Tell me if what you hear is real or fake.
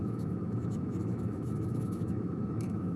fake